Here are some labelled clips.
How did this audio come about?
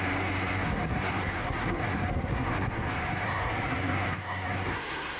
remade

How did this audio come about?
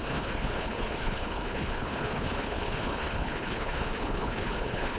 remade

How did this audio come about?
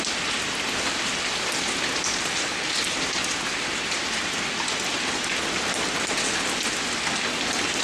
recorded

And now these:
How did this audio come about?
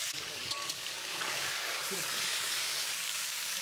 remade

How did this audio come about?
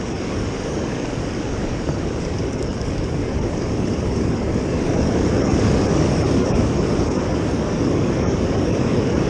remade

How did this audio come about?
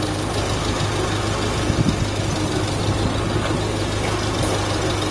recorded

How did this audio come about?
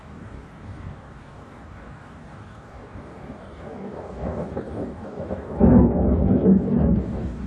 remade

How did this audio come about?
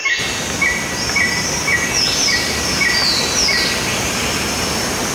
recorded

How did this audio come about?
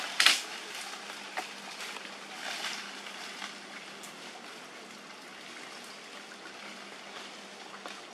recorded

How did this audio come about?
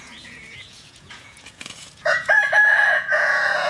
remade